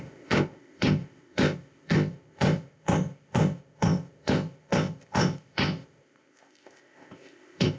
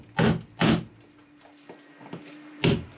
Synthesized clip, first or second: first